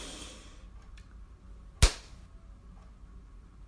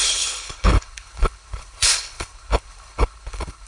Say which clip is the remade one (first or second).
second